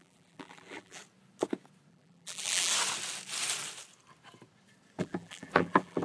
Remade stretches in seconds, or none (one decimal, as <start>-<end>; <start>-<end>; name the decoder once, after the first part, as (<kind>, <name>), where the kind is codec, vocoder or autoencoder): 0.0-1.0 (vocoder, BigVGAN v2); 1.9-2.7; 5.0-6.0